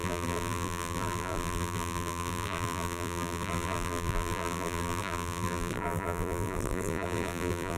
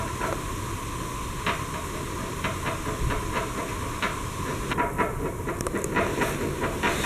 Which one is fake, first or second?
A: first